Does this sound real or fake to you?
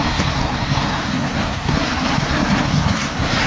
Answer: fake